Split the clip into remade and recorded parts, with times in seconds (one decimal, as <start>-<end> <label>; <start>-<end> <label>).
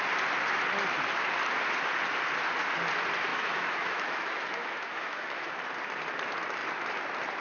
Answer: 0.0-3.3 recorded; 3.3-5.5 remade; 5.5-7.4 recorded